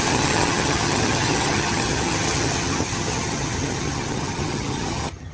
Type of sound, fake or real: fake